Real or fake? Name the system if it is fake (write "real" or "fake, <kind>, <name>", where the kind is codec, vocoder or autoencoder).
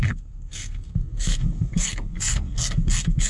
fake, codec, SNAC